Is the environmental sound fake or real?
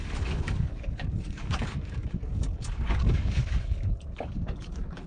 fake